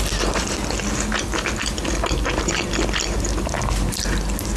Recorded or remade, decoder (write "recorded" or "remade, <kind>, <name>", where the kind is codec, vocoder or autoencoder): recorded